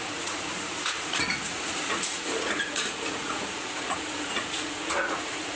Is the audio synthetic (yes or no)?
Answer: yes